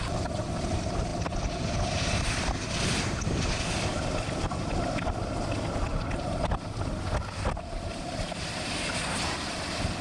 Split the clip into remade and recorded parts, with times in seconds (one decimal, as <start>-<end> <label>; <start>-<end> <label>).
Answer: 0.0-10.0 recorded

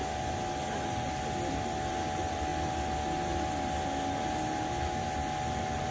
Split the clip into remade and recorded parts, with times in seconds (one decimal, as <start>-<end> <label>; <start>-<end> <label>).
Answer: 0.0-5.9 recorded

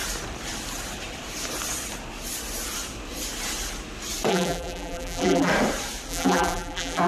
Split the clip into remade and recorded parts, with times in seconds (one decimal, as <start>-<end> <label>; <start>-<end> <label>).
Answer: 0.0-4.3 recorded; 4.3-5.5 remade; 5.5-6.1 recorded; 6.1-7.1 remade

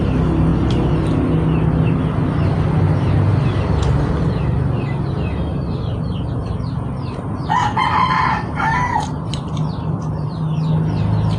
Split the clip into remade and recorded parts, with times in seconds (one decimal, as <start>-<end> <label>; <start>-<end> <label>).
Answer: 0.0-5.5 recorded; 5.5-10.4 remade; 10.4-11.4 recorded

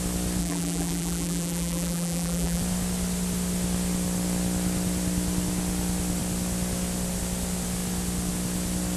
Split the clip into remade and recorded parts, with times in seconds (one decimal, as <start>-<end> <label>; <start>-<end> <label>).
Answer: 0.0-0.4 recorded; 0.4-2.6 remade; 2.6-9.0 recorded

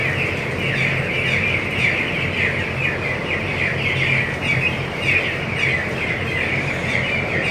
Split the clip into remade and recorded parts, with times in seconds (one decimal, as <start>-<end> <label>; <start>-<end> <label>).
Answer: 0.0-3.2 recorded; 3.2-3.8 remade; 3.8-4.2 recorded; 4.2-5.1 remade; 5.1-5.8 recorded; 5.8-7.5 remade